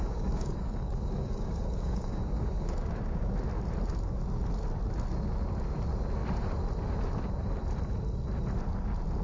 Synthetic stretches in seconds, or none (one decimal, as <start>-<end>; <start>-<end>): 0.0-3.3